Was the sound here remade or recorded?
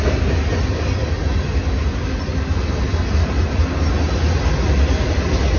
recorded